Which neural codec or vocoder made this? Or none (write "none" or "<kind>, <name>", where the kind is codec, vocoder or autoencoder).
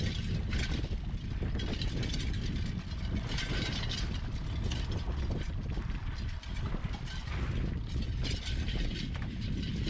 none